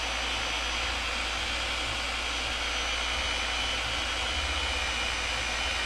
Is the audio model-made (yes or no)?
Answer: no